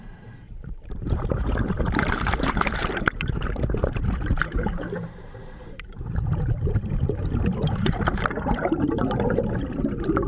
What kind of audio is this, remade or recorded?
remade